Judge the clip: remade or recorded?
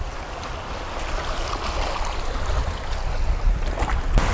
recorded